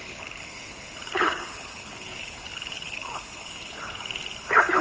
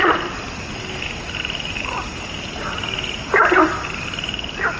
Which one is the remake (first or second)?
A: first